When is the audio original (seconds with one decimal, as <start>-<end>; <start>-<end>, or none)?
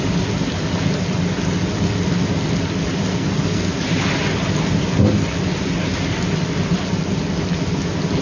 0.0-3.1; 3.8-8.2